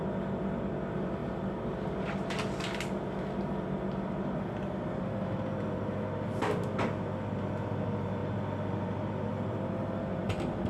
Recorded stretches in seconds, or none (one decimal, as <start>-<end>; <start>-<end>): 0.0-1.2; 5.5-8.2; 9.2-10.7